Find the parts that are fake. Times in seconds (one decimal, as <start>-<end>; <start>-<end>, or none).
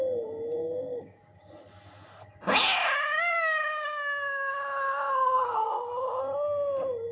0.6-1.5; 2.8-6.2